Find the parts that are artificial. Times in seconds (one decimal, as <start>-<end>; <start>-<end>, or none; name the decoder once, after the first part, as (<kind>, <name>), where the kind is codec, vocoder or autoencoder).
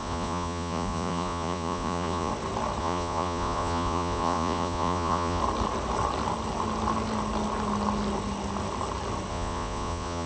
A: 0.0-2.3 (vocoder, Vocos); 2.8-5.4; 9.3-10.3